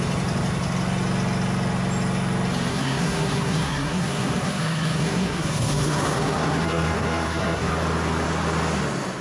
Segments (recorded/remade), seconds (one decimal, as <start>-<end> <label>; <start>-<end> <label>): 0.0-2.7 recorded; 2.7-7.7 remade; 7.7-9.2 recorded